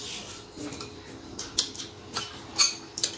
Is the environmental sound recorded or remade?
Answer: recorded